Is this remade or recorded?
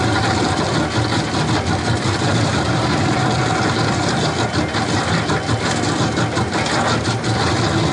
recorded